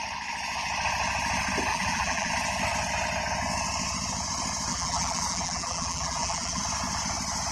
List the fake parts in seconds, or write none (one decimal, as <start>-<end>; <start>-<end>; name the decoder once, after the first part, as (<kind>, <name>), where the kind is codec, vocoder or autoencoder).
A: 1.7-2.3 (vocoder, BigVGAN v2); 4.7-6.6